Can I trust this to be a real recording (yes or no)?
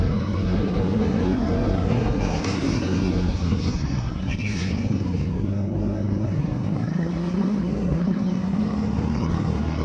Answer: no